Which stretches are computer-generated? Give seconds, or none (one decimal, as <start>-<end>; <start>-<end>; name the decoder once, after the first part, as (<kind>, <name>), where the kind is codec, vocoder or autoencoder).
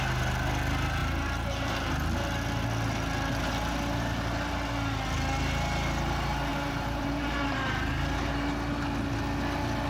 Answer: 1.0-1.7 (vocoder, BigVGAN v2); 6.5-8.3